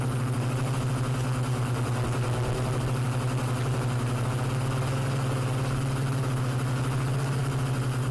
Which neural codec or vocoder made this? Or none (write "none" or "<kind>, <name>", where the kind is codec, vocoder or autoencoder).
none